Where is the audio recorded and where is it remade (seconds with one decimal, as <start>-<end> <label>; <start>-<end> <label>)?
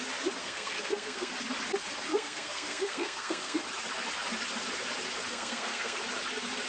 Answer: 0.0-0.4 recorded; 0.4-1.3 remade; 1.3-2.1 recorded; 2.1-3.6 remade; 3.6-5.3 recorded; 5.3-6.0 remade; 6.0-6.7 recorded